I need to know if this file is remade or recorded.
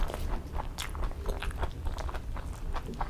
recorded